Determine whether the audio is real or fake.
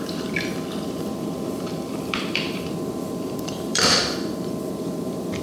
fake